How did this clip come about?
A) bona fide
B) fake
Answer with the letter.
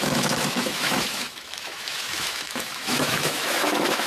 B